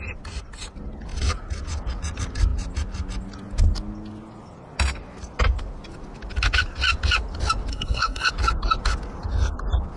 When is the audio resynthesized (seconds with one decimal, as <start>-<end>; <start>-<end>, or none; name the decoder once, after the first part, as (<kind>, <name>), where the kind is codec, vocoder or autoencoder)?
7.7-8.3 (codec, SNAC)